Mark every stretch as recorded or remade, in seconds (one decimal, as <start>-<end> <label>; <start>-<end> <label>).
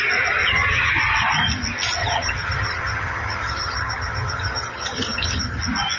0.0-0.4 recorded; 0.4-0.9 remade; 0.9-2.0 recorded; 2.0-5.6 remade; 5.6-6.0 recorded